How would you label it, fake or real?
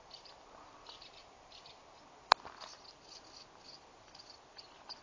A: real